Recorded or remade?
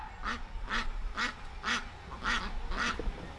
recorded